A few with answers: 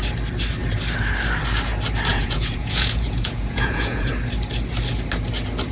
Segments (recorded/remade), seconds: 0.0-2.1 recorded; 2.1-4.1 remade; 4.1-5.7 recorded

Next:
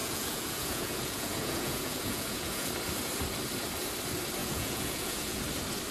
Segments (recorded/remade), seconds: 0.0-2.7 remade; 2.7-4.4 recorded; 4.4-5.4 remade; 5.4-5.9 recorded

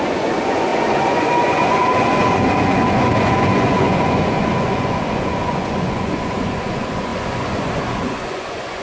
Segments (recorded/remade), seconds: 0.0-8.8 remade

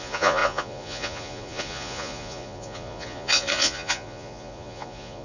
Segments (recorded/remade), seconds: 0.0-5.2 remade

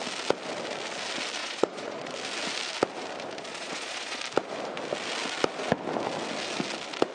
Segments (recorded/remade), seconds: 0.0-1.4 recorded; 1.4-2.1 remade; 2.1-3.5 recorded; 3.5-4.2 remade; 4.2-7.1 recorded